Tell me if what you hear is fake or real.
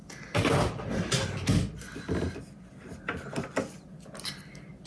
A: real